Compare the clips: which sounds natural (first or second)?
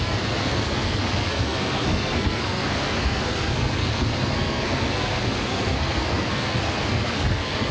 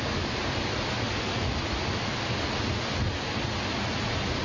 second